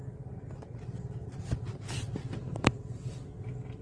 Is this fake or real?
real